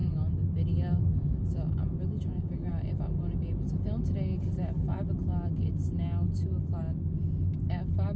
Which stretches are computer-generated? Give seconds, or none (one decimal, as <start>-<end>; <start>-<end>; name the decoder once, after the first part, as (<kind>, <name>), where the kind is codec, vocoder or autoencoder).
none